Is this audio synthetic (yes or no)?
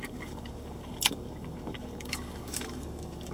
yes